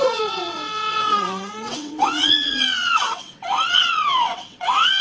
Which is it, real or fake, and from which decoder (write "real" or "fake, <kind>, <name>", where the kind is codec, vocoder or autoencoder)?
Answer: fake, vocoder, WaveNeXt